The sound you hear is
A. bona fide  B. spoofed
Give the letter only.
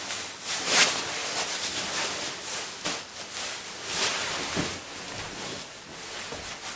A